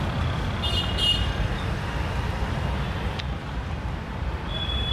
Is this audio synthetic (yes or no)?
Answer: yes